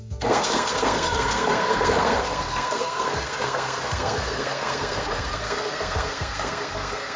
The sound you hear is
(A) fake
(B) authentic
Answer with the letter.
A